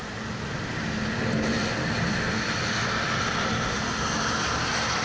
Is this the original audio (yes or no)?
yes